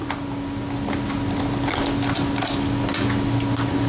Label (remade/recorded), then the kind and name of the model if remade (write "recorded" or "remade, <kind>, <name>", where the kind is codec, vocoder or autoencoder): recorded